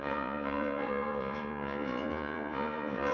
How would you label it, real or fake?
fake